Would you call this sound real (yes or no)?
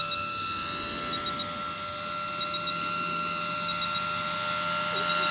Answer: yes